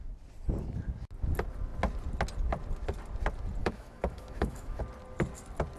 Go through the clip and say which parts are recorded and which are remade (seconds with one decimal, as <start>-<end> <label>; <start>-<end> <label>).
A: 0.0-3.6 recorded; 3.6-4.8 remade; 4.8-5.8 recorded